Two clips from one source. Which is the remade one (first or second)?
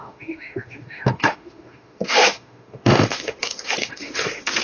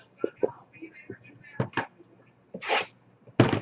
first